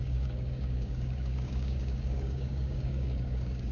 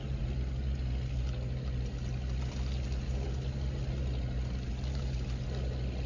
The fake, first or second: first